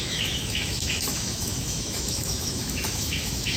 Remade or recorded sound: remade